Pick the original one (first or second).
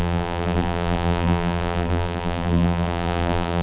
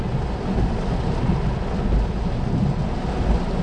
second